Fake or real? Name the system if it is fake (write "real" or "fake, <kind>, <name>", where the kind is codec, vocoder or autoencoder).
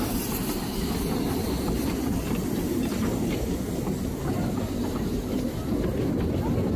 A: real